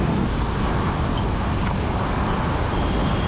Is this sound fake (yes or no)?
no